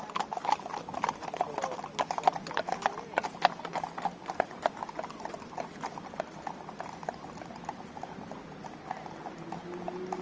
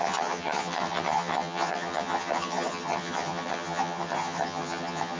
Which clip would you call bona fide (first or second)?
first